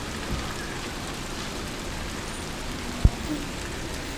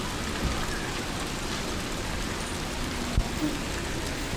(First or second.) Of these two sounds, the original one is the first